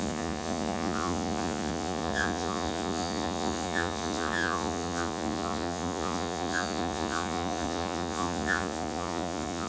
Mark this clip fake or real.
fake